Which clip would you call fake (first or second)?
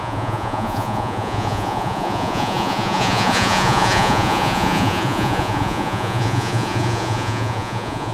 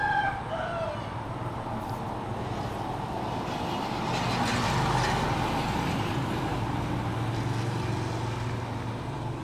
first